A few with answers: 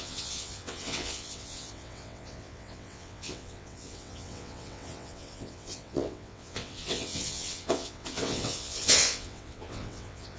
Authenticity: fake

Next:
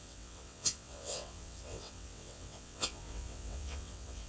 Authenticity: fake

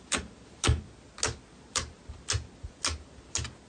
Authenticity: real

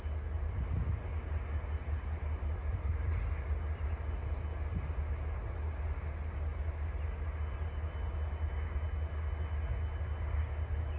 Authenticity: real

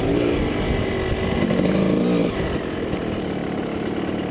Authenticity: real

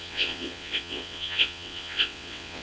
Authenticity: fake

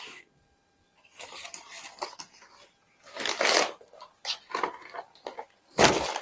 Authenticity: real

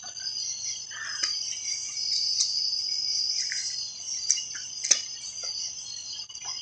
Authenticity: real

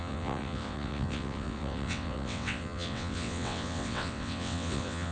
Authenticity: fake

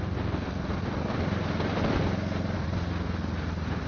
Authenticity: real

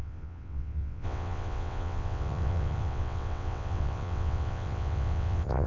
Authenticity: fake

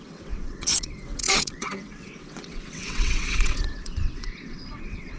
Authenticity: fake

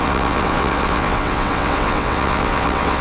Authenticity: fake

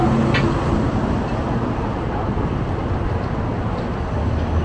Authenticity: real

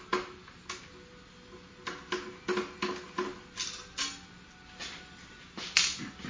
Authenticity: real